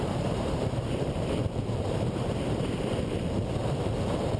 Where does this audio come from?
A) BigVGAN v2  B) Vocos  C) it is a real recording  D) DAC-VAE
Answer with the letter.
A